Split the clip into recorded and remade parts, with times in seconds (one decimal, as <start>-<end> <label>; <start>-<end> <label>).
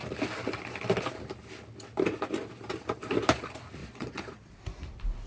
0.0-3.8 recorded; 3.8-4.6 remade; 4.6-5.3 recorded